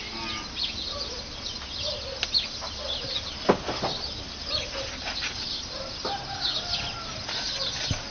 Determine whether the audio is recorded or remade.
recorded